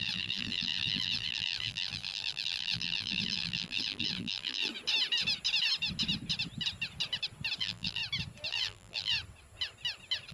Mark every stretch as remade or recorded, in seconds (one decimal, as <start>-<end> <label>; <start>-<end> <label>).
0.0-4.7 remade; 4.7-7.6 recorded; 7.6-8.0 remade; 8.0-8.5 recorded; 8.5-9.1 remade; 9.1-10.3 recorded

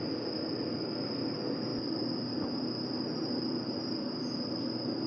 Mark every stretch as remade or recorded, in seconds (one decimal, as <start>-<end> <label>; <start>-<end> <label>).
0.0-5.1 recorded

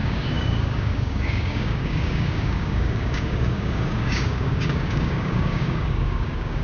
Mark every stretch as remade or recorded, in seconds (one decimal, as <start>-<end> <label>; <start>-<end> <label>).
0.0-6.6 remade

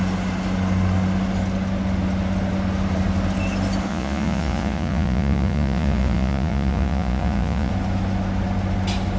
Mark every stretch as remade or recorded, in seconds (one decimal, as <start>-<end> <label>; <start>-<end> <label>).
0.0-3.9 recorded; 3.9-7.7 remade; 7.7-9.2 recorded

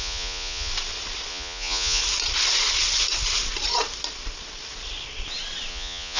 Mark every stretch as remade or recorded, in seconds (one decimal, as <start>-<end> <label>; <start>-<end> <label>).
0.0-0.7 remade; 0.7-1.3 recorded; 1.3-2.0 remade; 2.0-5.7 recorded; 5.7-6.2 remade

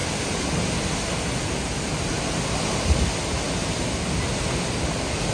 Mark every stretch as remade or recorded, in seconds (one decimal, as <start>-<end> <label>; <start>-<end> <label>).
0.0-5.3 recorded

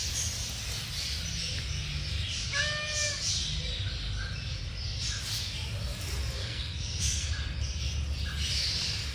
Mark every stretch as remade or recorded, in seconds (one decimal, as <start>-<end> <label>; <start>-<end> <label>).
0.0-6.4 recorded; 6.4-7.3 remade; 7.3-9.1 recorded

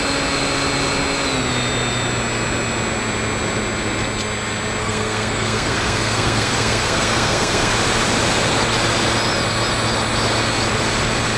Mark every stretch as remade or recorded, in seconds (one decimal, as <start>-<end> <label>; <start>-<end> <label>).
0.0-4.8 recorded; 4.8-7.7 remade; 7.7-11.4 recorded